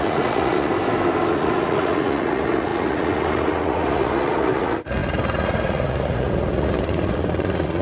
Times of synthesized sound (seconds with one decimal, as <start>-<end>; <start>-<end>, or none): 0.0-0.7; 1.3-7.8